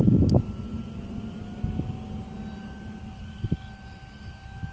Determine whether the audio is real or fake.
real